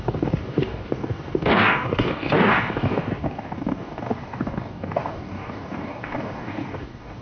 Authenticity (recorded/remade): remade